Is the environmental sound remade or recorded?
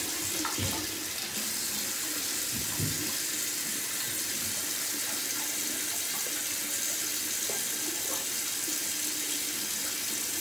recorded